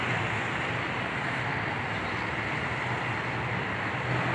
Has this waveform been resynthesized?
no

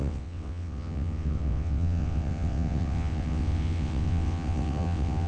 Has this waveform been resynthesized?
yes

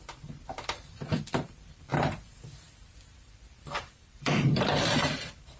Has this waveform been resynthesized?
yes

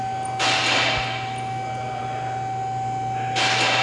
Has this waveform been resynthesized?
no